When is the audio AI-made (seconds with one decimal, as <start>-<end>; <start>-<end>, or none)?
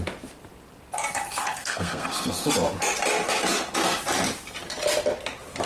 1.4-2.5